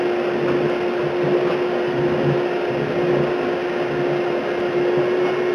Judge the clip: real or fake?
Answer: real